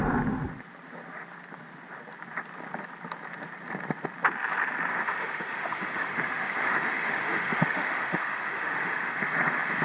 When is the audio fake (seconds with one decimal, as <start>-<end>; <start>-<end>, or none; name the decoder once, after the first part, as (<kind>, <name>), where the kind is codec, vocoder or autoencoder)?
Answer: 4.9-9.2 (autoencoder, DAC-VAE)

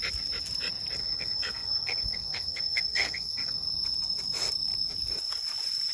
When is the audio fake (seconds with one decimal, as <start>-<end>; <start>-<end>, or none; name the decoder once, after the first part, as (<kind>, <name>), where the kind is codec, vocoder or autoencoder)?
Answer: 1.0-3.7 (codec, SNAC)

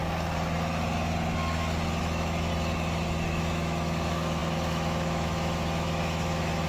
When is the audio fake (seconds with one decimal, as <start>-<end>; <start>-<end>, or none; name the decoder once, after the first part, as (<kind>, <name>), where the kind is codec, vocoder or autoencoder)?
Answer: 2.0-2.5 (autoencoder, DAC-VAE); 3.3-6.7

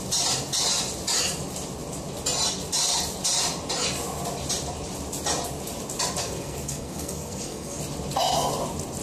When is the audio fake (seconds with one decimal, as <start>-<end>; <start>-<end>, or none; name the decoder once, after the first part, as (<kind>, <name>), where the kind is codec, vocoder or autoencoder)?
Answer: 6.2-7.8 (codec, SNAC)

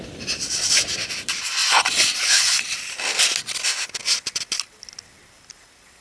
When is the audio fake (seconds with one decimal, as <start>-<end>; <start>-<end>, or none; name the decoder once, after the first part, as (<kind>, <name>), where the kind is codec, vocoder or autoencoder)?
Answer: 1.6-2.6 (vocoder, Vocos)

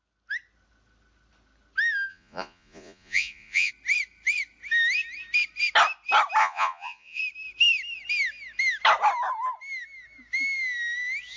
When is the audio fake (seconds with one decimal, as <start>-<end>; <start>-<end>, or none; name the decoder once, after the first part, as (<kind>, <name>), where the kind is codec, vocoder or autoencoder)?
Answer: 2.1-3.7 (vocoder, Vocos); 6.4-7.2

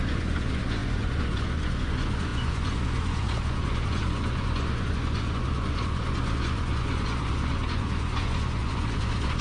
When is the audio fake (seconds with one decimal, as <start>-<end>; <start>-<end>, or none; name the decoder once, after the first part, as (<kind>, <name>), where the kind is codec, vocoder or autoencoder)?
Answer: 0.0-9.4 (vocoder, Vocos)

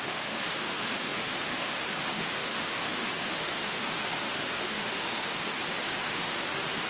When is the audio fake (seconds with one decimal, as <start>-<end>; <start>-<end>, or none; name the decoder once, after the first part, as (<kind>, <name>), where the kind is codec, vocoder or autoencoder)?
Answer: 0.0-5.4 (autoencoder, DAC-VAE); 5.9-6.9